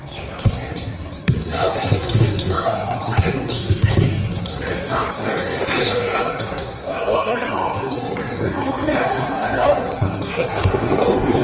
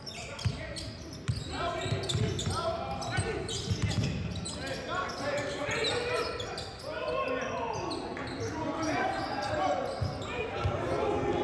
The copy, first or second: first